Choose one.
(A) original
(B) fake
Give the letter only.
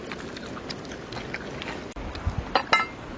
A